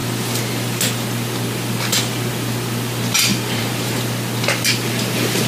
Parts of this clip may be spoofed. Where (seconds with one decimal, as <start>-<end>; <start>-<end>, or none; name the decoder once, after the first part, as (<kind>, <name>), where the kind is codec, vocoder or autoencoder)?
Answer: 3.3-4.0 (vocoder, BigVGAN v2)